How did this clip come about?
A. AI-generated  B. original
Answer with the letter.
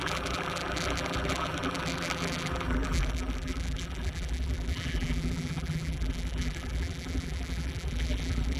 A